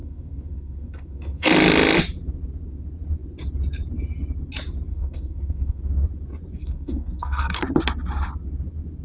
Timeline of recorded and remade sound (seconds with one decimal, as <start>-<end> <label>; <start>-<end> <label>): 0.0-1.5 remade; 1.5-4.9 recorded; 4.9-5.8 remade; 5.8-6.6 recorded; 6.6-7.6 remade; 7.6-9.0 recorded